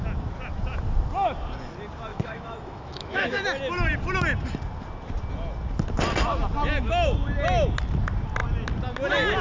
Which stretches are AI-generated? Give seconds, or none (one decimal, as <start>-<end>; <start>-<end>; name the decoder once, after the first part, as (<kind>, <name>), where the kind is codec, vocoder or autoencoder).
2.1-3.4 (autoencoder, DAC-VAE)